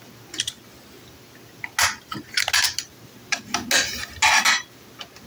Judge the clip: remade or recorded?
recorded